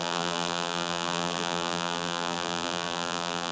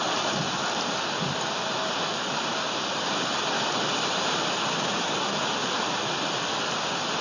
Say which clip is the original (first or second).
second